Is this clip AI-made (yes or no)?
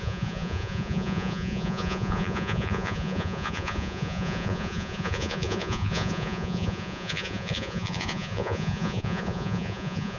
yes